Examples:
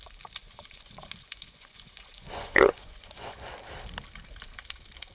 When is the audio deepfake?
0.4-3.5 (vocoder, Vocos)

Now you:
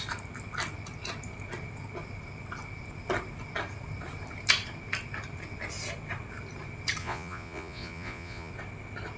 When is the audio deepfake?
7.0-8.5 (vocoder, Vocos)

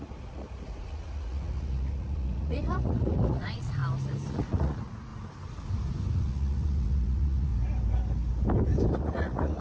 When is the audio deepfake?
0.0-3.8 (vocoder, Vocos); 4.3-5.1; 6.1-7.5; 8.9-9.6

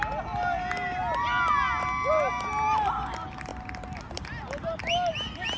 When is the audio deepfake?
none